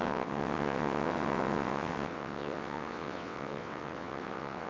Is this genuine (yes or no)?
no